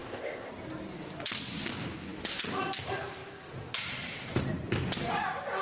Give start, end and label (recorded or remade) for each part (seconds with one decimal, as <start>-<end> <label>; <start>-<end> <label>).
0.0-0.5 remade; 0.5-5.6 recorded

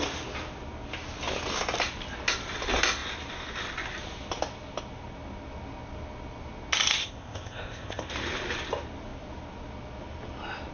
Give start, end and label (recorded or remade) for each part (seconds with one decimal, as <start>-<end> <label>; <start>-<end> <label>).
0.0-7.0 recorded; 7.0-8.1 remade; 8.1-10.7 recorded